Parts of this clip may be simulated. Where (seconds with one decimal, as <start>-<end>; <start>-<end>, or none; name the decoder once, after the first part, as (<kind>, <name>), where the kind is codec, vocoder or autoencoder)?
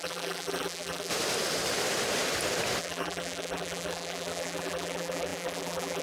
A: 0.0-1.1 (vocoder, BigVGAN v2); 2.8-6.0